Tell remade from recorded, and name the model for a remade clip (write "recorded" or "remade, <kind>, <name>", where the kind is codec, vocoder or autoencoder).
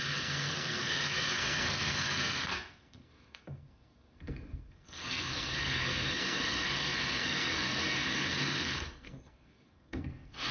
remade, codec, SNAC